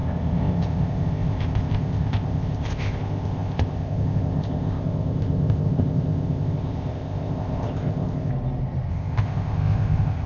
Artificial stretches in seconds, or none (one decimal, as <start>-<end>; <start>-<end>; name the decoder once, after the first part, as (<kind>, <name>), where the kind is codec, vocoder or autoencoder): 0.0-8.3 (codec, ZipCodec); 8.9-10.3